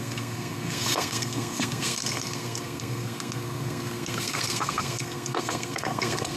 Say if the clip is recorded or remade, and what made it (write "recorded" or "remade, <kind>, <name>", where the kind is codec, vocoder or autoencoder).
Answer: remade, codec, SNAC